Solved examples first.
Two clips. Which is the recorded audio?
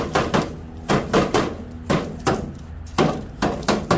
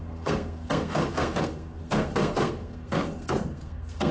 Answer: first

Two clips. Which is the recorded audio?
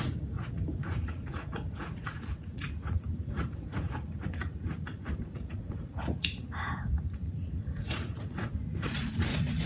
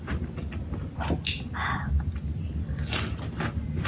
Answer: second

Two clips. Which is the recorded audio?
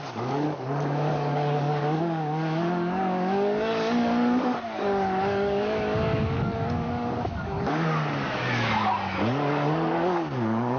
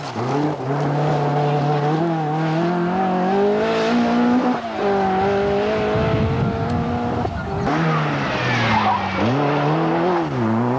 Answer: second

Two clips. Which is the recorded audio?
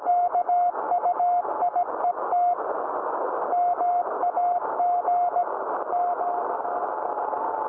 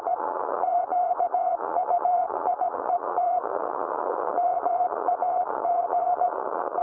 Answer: first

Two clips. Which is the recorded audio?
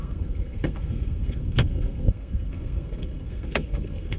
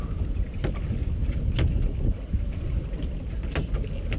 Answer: second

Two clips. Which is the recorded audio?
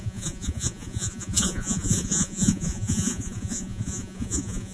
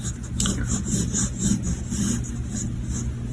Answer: second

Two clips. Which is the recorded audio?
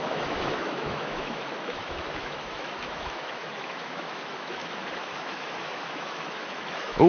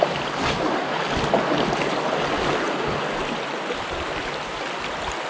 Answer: second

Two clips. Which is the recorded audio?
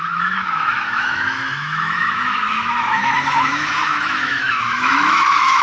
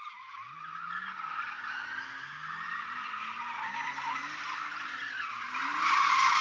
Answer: second